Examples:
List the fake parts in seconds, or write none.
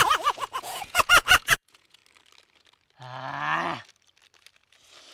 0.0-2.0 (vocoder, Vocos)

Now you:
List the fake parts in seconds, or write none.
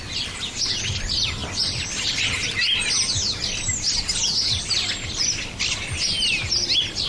none